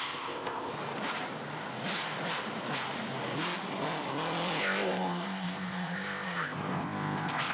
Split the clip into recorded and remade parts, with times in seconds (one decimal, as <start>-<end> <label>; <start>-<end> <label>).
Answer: 0.0-0.7 remade; 0.7-4.6 recorded; 4.6-7.5 remade